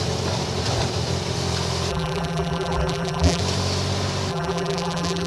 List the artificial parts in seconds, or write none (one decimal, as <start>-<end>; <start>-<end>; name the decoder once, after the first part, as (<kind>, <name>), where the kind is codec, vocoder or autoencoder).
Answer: 1.9-3.4 (vocoder, BigVGAN v2); 4.3-5.3